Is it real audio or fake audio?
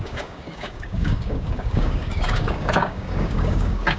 fake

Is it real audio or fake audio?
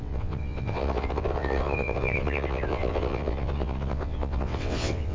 fake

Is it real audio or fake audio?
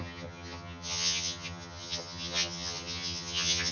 fake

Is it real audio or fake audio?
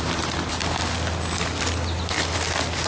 real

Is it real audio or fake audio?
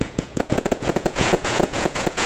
fake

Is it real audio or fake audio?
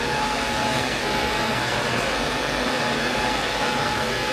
fake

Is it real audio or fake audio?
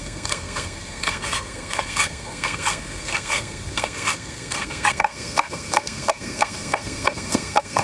fake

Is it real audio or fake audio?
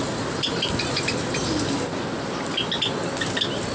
real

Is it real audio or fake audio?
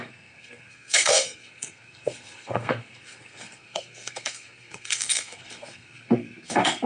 fake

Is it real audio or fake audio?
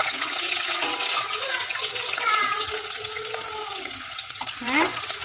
fake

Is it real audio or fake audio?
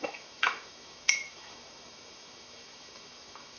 fake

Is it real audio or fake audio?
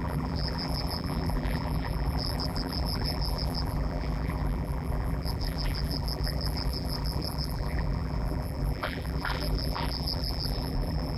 fake